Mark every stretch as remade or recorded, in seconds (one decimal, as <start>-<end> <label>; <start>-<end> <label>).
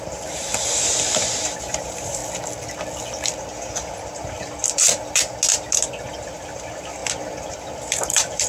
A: 0.0-2.2 remade; 2.2-3.9 recorded; 3.9-4.6 remade; 4.6-6.1 recorded; 6.1-7.0 remade; 7.0-7.5 recorded; 7.5-8.5 remade